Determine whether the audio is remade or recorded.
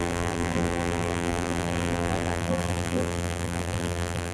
remade